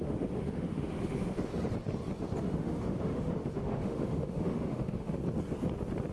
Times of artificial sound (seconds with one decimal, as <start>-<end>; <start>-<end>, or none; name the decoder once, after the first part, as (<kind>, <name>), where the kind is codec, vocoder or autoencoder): 0.0-1.5 (autoencoder, DAC-VAE); 2.4-5.2